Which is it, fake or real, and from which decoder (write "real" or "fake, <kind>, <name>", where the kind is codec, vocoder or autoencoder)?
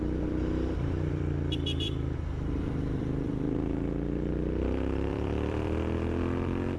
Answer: fake, vocoder, BigVGAN v2